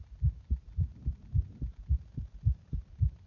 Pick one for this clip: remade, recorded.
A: recorded